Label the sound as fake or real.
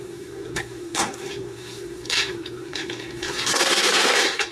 fake